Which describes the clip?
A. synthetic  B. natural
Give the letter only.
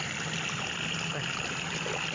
B